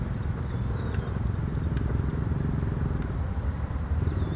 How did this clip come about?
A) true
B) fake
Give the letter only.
A